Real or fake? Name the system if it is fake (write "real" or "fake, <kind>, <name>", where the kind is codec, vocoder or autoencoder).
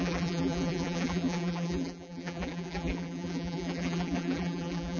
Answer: fake, vocoder, BigVGAN v2